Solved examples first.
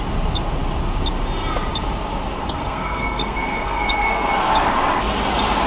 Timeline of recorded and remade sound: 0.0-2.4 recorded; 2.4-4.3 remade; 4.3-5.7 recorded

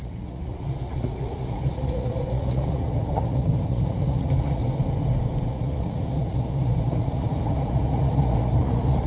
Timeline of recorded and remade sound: 0.0-4.6 remade; 4.6-5.5 recorded; 5.5-9.1 remade

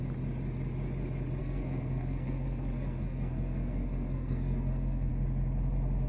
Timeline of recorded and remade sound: 0.0-1.4 recorded; 1.4-5.1 remade; 5.1-6.1 recorded

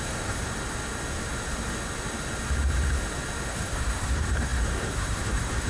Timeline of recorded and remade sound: 0.0-0.4 remade; 0.4-3.5 recorded; 3.5-5.7 remade

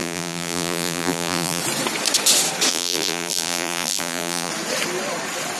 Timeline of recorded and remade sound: 0.0-1.6 remade; 1.6-2.7 recorded; 2.7-4.5 remade; 4.5-5.6 recorded

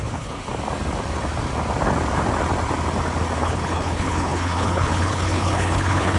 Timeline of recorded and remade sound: 0.0-0.4 remade; 0.4-3.4 recorded; 3.4-6.2 remade

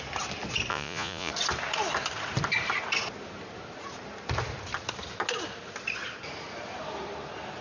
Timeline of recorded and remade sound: 0.0-0.7 recorded; 0.7-1.3 remade; 1.3-7.6 recorded

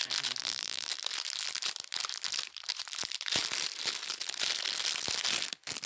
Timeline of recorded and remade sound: 0.0-0.4 recorded; 0.4-0.9 remade; 0.9-5.9 recorded